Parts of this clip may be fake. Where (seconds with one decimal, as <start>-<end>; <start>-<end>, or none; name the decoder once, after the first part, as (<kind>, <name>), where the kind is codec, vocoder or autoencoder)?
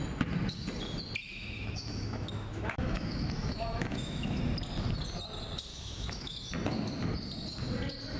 1.2-4.4 (autoencoder, DAC-VAE); 5.7-6.5